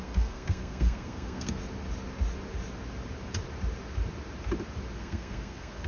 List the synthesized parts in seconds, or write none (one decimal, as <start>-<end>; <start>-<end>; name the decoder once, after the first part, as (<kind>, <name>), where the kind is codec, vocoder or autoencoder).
0.0-1.6 (codec, SNAC); 5.0-5.9